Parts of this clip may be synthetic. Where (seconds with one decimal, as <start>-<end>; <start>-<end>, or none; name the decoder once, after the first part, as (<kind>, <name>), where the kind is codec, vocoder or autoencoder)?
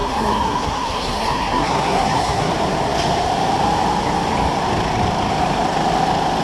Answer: 0.0-2.5 (codec, SNAC)